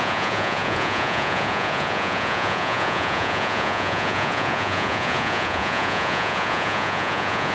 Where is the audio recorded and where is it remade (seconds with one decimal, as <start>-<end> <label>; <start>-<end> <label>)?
0.0-7.5 remade